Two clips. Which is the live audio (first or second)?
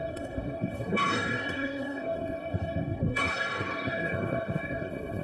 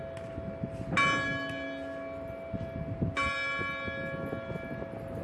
second